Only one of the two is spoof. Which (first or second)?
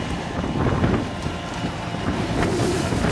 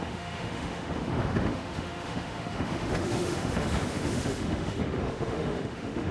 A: second